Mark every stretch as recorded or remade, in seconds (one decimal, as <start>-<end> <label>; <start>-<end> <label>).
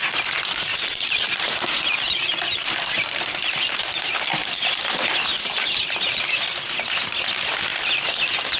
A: 0.0-0.7 recorded; 0.7-4.8 remade; 4.8-5.3 recorded; 5.3-6.2 remade; 6.2-8.6 recorded